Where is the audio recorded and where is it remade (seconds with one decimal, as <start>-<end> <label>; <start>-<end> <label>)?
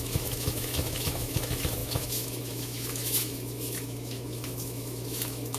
0.0-5.6 remade